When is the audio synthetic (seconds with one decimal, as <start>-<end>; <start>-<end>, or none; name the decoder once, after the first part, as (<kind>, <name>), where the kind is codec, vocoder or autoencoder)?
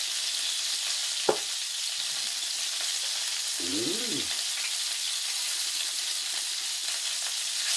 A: none